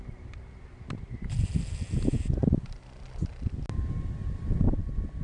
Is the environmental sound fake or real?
real